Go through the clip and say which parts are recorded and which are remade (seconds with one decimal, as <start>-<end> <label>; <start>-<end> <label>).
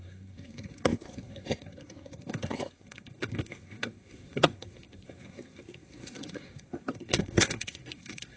0.0-8.4 remade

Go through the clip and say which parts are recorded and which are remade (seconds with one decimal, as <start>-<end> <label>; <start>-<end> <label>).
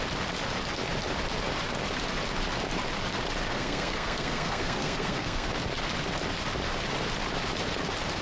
0.0-3.5 recorded; 3.5-5.5 remade; 5.5-8.2 recorded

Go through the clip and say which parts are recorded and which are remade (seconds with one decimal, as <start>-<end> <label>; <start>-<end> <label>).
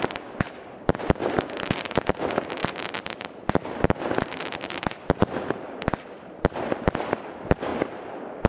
0.0-7.7 remade; 7.7-8.5 recorded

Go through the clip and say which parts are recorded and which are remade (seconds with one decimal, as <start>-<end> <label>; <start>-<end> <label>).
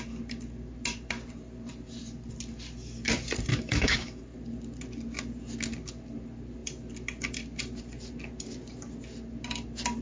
0.0-3.5 recorded; 3.5-4.2 remade; 4.2-10.0 recorded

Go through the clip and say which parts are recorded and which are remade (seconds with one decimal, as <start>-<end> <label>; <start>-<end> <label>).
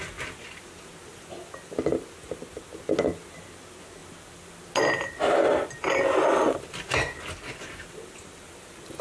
0.0-9.0 recorded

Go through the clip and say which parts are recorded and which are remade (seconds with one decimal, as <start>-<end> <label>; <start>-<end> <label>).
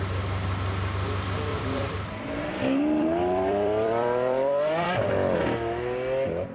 0.0-1.5 recorded; 1.5-5.1 remade; 5.1-6.5 recorded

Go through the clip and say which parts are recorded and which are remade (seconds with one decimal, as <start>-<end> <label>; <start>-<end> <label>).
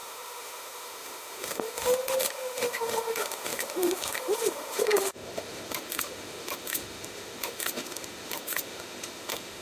0.0-9.6 remade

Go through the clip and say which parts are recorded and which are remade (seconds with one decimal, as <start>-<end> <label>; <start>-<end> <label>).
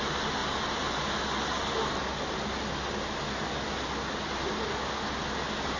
0.0-5.8 recorded